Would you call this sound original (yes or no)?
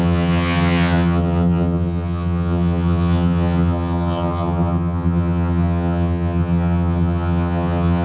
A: no